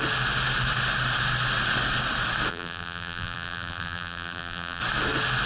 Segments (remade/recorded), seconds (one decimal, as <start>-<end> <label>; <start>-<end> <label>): 0.0-2.5 recorded; 2.5-4.8 remade; 4.8-5.5 recorded